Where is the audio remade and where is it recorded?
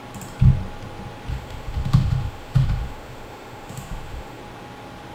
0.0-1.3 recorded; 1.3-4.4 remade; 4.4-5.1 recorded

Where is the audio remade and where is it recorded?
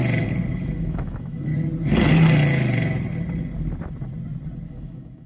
0.0-0.6 recorded; 0.6-1.5 remade; 1.5-4.7 recorded; 4.7-5.3 remade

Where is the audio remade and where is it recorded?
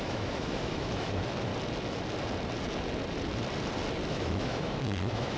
0.0-1.5 remade; 1.5-4.1 recorded; 4.1-5.4 remade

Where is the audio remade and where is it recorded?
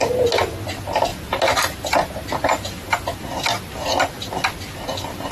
0.0-5.3 recorded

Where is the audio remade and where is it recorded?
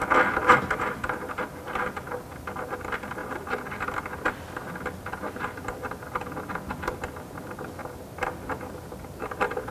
0.0-0.4 recorded; 0.4-1.4 remade; 1.4-7.8 recorded; 7.8-9.7 remade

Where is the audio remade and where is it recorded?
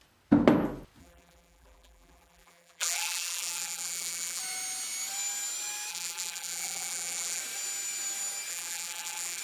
0.0-1.0 recorded; 1.0-4.4 remade; 4.4-5.9 recorded; 5.9-7.4 remade; 7.4-8.5 recorded; 8.5-9.4 remade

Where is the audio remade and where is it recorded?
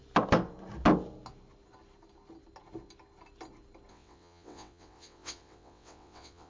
0.0-3.9 recorded; 3.9-6.5 remade